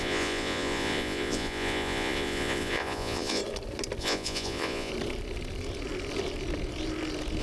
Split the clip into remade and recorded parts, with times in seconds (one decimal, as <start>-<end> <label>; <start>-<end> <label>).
0.0-3.4 remade; 3.4-4.0 recorded; 4.0-4.9 remade; 4.9-7.4 recorded